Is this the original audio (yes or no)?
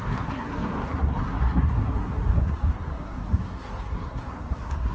no